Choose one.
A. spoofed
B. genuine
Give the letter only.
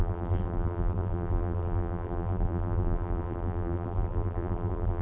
A